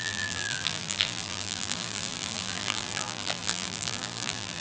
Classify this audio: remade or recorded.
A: remade